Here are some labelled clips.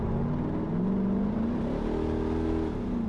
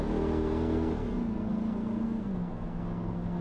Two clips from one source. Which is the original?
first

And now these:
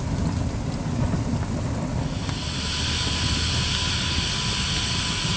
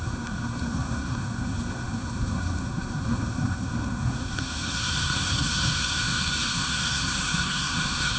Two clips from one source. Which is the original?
first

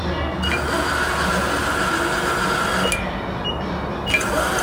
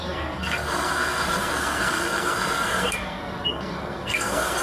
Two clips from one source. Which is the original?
first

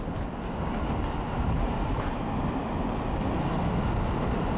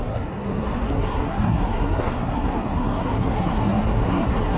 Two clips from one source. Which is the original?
first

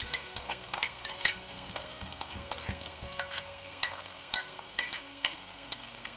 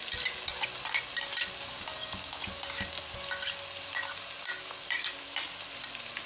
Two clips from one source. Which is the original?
second